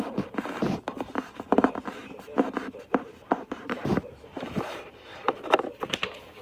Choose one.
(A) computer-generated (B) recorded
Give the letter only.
A